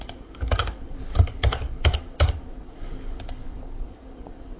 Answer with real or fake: fake